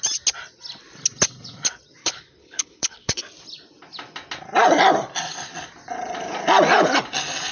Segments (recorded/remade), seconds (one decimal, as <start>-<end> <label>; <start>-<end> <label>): 0.0-2.0 recorded; 2.0-3.2 remade; 3.2-7.5 recorded